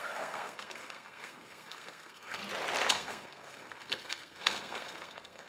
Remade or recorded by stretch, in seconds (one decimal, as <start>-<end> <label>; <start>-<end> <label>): 0.0-2.4 remade; 2.4-2.9 recorded; 2.9-5.5 remade